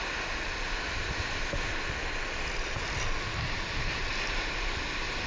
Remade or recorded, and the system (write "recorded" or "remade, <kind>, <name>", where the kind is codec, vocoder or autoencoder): recorded